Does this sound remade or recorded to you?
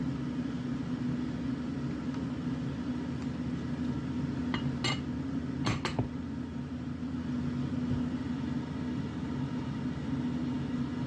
recorded